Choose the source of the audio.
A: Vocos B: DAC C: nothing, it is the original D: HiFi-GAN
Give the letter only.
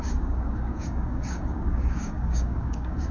B